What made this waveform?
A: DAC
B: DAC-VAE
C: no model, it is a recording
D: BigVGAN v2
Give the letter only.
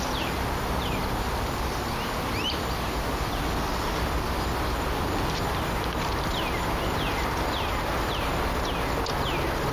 C